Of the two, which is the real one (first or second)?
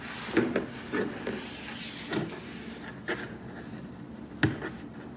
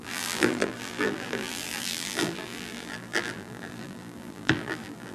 first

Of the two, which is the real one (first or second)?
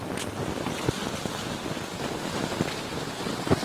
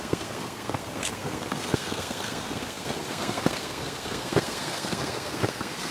first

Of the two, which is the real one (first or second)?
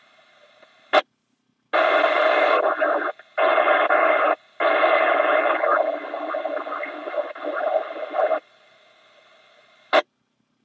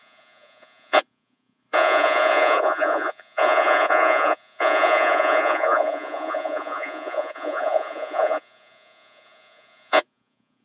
first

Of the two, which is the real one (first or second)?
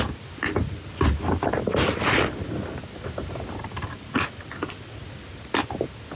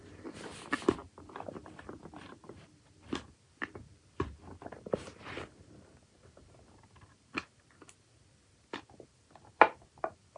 first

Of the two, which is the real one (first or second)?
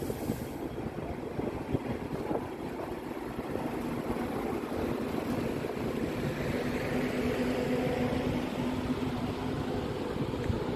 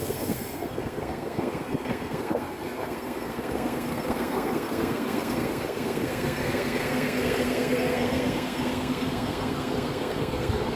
first